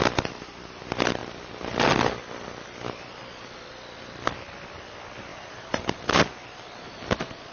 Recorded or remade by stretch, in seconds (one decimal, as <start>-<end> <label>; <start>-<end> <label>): 0.0-5.3 recorded; 5.3-5.9 remade; 5.9-7.5 recorded